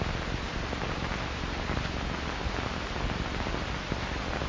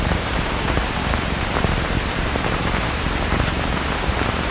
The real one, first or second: first